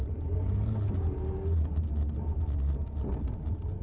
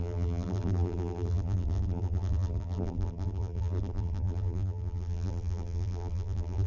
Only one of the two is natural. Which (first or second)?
first